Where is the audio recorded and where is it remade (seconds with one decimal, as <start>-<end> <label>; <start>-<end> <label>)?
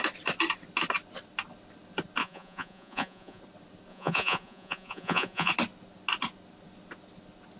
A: 0.0-2.2 recorded; 2.2-3.4 remade; 3.4-3.9 recorded; 3.9-5.5 remade; 5.5-7.6 recorded